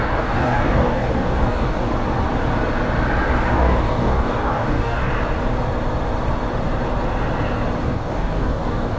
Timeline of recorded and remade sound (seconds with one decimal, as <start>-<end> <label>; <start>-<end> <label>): 0.0-1.9 remade; 1.9-3.5 recorded; 3.5-5.1 remade; 5.1-7.8 recorded; 7.8-9.0 remade